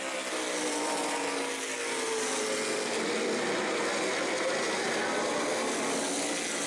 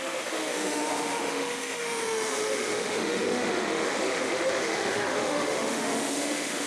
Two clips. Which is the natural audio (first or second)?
first